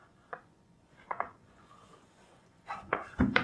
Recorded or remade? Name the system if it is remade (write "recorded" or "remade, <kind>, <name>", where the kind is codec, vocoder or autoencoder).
remade, vocoder, Vocos